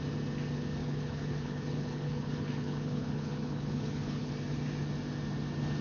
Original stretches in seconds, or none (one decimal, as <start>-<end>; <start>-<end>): 0.0-0.8; 4.3-5.8